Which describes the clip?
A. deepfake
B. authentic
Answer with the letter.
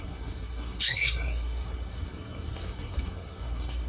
A